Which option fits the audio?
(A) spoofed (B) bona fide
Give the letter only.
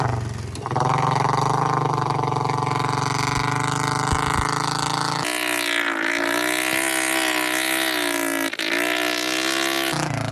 B